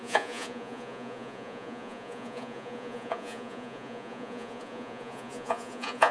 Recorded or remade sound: remade